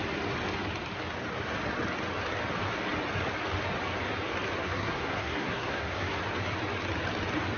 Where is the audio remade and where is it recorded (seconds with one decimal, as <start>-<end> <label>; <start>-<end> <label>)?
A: 0.0-4.6 recorded; 4.6-6.2 remade; 6.2-7.6 recorded